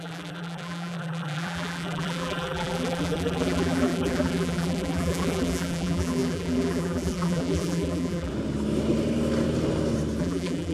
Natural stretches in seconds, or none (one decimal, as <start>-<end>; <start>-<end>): 8.3-10.2